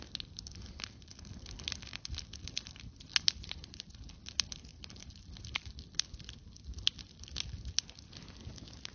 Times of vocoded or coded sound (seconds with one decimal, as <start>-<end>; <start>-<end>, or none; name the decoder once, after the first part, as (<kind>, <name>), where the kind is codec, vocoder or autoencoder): 4.7-5.4 (vocoder, BigVGAN v2)